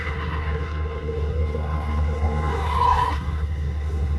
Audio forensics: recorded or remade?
remade